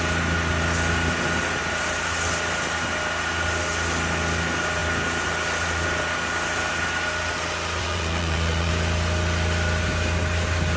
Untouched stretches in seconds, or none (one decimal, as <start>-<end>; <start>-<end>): 0.0-7.8; 8.7-10.8